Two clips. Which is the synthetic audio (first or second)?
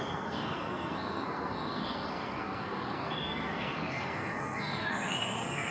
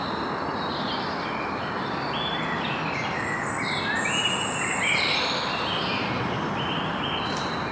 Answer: first